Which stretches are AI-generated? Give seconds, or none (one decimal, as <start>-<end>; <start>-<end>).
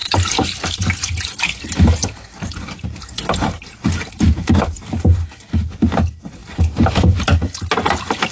0.0-1.4; 2.0-3.2; 3.7-4.8; 6.4-6.9